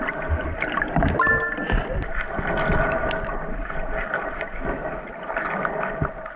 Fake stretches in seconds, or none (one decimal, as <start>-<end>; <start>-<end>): none